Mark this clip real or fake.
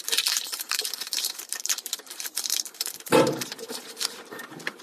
fake